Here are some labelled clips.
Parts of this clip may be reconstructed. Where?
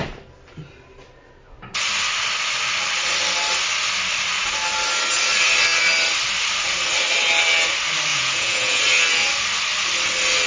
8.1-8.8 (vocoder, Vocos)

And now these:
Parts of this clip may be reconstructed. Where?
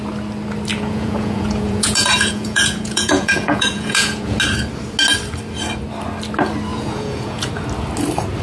0.7-4.4 (vocoder, Vocos); 6.7-7.5